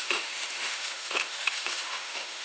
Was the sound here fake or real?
fake